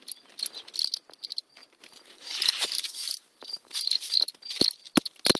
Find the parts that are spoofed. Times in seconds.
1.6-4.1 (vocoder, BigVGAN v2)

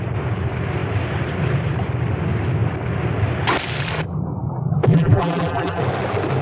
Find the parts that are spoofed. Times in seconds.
4.9-5.8 (vocoder, BigVGAN v2)

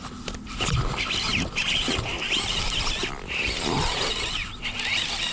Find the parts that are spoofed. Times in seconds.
none

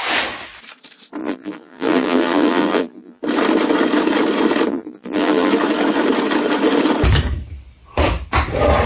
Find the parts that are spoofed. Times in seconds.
1.2-3.2 (vocoder, BigVGAN v2); 4.7-5.5

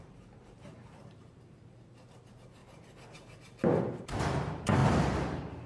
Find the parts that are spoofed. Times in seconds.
0.0-2.6 (vocoder, BigVGAN v2); 3.8-4.8

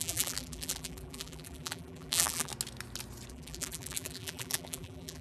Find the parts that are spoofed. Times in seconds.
0.0-2.5 (vocoder, BigVGAN v2); 3.3-5.2